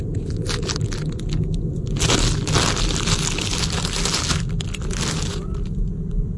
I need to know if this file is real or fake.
real